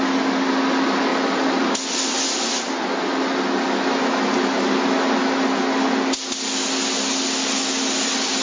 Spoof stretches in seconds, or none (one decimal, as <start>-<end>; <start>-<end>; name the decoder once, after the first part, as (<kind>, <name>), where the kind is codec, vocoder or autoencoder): none